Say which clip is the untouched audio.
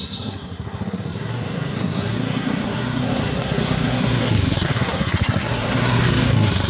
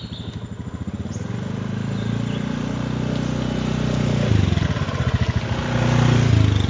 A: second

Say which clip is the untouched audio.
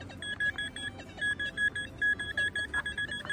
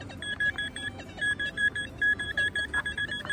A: first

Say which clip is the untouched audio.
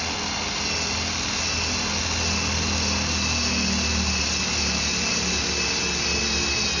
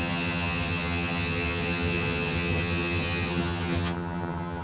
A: first